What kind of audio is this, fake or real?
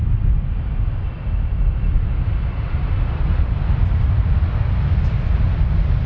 real